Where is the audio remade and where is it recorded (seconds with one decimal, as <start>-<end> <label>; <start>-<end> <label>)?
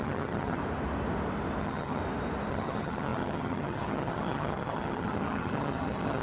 0.0-0.6 remade; 0.6-1.6 recorded; 1.6-2.0 remade; 2.0-2.5 recorded; 2.5-6.2 remade